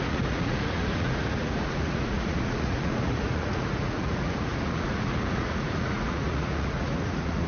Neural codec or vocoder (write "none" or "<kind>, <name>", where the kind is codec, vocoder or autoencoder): vocoder, Vocos